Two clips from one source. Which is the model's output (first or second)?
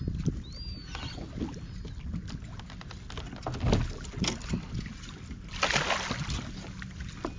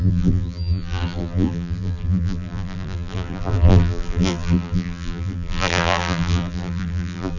second